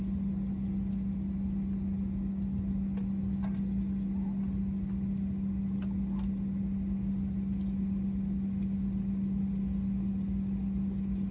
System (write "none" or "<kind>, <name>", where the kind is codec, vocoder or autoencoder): none